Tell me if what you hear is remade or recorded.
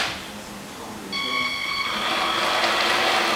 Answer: recorded